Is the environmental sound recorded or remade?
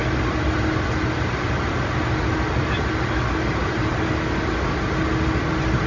recorded